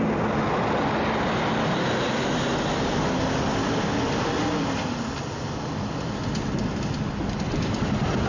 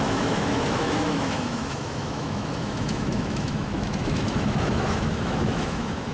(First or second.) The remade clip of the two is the second